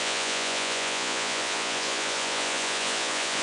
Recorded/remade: remade